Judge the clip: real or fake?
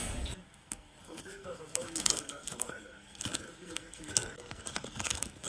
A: fake